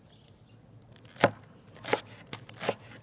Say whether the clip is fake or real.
real